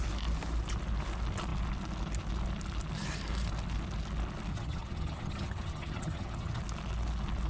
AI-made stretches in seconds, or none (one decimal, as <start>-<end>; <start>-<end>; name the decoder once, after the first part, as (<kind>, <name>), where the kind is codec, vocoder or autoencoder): 4.5-6.6 (vocoder, HiFi-GAN)